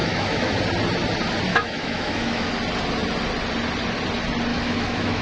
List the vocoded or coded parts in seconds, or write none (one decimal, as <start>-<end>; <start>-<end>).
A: 0.0-0.6; 1.5-2.5; 4.5-5.2